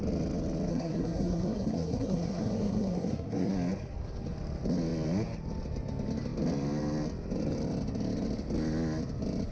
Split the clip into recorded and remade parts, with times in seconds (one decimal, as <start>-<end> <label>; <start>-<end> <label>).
0.0-0.7 recorded; 0.7-3.5 remade; 3.5-9.5 recorded